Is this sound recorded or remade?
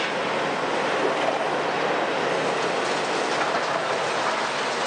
recorded